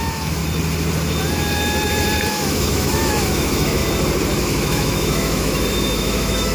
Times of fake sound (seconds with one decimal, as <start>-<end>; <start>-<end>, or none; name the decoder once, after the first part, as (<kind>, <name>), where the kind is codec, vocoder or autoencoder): 0.0-0.4 (autoencoder, DAC-VAE); 2.3-3.8; 4.4-6.5